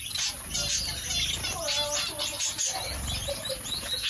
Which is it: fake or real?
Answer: real